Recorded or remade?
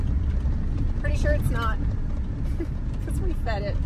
recorded